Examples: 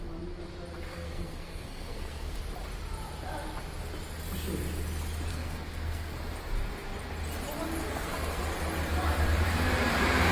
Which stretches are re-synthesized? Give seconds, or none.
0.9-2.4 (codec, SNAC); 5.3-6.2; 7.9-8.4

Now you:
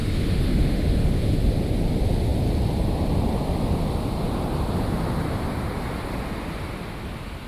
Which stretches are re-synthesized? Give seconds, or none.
0.0-1.4 (autoencoder, DAC-VAE)

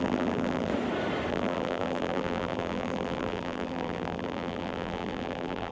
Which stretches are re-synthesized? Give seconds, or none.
0.0-0.7 (vocoder, BigVGAN v2); 1.3-5.7

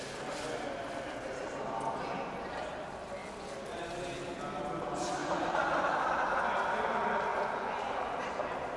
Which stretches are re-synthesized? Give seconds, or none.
5.2-5.9 (vocoder, Vocos); 7.3-8.2

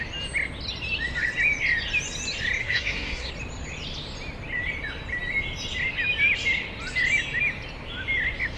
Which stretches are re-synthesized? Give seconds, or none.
2.6-3.3 (codec, SNAC)

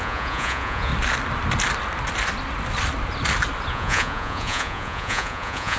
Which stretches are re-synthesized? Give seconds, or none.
0.0-0.9 (vocoder, Vocos); 3.7-5.8